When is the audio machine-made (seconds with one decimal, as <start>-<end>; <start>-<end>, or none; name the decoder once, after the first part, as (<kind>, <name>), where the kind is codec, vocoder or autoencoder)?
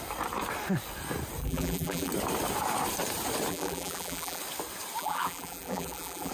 1.4-2.1 (vocoder, BigVGAN v2); 3.5-4.4; 5.0-6.3